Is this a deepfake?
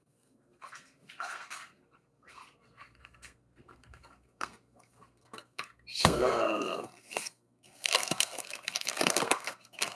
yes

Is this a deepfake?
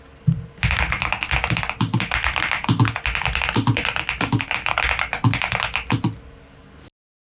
no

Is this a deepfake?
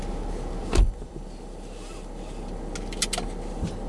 no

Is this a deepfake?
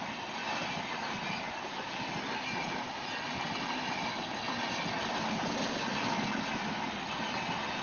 no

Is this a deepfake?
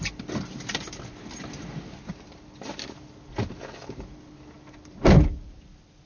no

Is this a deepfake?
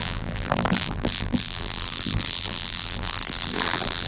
yes